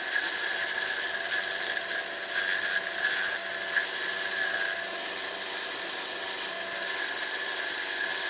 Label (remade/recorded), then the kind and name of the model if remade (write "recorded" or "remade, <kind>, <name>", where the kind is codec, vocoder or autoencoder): recorded